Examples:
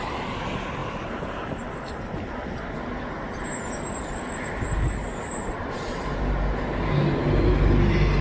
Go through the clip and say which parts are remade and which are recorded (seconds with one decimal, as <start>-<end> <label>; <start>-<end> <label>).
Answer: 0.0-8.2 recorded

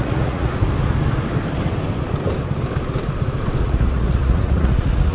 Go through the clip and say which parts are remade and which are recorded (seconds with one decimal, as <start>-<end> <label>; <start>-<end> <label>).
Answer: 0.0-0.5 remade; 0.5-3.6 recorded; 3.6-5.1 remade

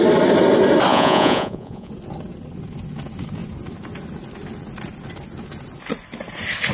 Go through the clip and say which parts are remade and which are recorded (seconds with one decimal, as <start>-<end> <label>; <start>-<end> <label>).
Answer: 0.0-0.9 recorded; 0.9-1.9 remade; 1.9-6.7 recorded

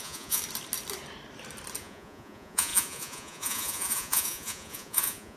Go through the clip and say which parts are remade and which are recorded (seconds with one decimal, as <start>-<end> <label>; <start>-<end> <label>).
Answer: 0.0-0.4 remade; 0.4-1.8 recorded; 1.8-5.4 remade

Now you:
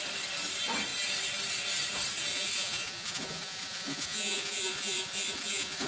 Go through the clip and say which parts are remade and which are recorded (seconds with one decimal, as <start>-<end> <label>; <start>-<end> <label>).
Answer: 0.0-2.3 recorded; 2.3-5.9 remade

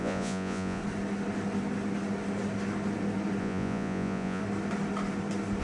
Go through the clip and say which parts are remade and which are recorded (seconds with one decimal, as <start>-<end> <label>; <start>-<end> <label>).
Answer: 0.0-0.8 remade; 0.8-3.4 recorded; 3.4-4.4 remade; 4.4-5.6 recorded

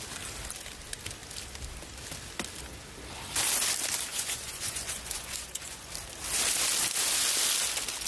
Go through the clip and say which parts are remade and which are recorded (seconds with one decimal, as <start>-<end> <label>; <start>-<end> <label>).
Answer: 0.0-4.1 recorded; 4.1-5.9 remade; 5.9-8.1 recorded

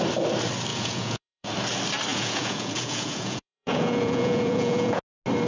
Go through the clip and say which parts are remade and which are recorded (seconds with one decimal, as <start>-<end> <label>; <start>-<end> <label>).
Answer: 0.0-0.7 recorded; 0.7-1.5 remade; 1.5-2.1 recorded; 2.1-5.0 remade; 5.0-5.5 recorded